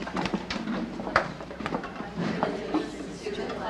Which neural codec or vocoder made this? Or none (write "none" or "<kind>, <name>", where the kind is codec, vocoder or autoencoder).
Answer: vocoder, BigVGAN v2